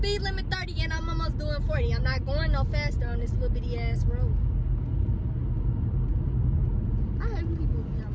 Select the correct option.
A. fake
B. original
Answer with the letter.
B